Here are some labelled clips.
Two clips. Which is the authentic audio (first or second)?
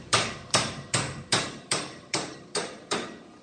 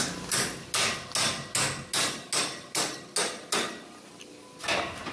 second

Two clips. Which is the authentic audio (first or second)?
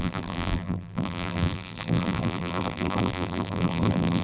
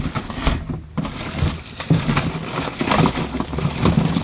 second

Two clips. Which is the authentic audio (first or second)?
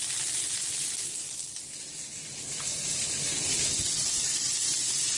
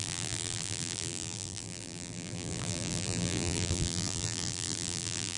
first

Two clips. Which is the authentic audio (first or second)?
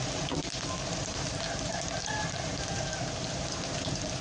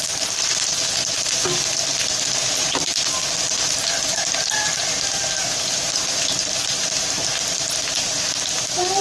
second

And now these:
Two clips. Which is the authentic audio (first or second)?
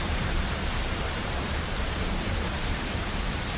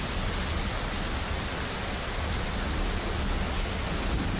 second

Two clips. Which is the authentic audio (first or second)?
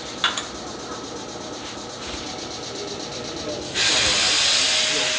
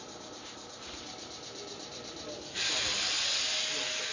first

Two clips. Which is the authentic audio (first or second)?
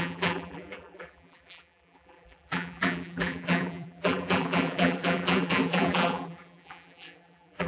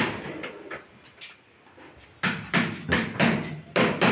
second